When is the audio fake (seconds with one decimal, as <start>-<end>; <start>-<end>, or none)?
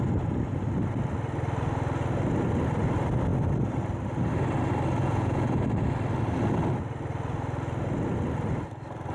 5.0-5.6